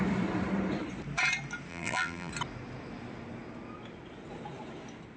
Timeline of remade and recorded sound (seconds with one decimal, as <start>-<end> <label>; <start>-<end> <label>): 0.0-1.7 recorded; 1.7-2.3 remade; 2.3-5.2 recorded